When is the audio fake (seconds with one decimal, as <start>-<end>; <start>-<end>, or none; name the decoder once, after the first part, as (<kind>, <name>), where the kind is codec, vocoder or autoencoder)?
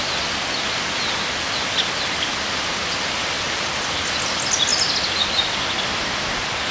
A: none